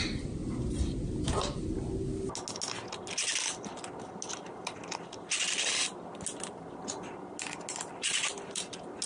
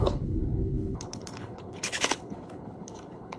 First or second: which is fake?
second